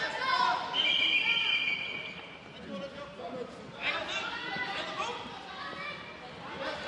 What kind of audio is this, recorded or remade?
recorded